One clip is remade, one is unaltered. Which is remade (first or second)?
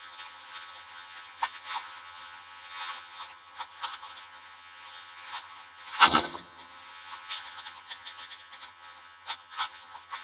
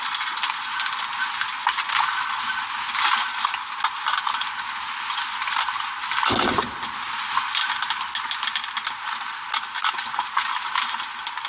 first